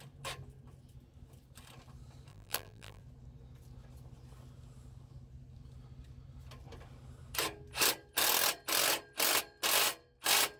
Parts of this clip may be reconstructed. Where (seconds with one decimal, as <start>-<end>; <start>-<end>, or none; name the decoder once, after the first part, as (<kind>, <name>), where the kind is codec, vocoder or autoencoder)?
2.3-3.0 (vocoder, BigVGAN v2)